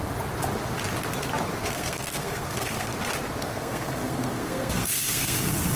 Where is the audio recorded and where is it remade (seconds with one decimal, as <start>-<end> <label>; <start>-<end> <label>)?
0.0-1.6 recorded; 1.6-2.9 remade; 2.9-3.4 recorded; 3.4-5.8 remade